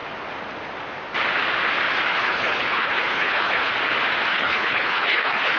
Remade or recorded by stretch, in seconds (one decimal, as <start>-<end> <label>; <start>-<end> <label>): 0.0-2.1 recorded; 2.1-3.7 remade; 3.7-4.3 recorded; 4.3-5.6 remade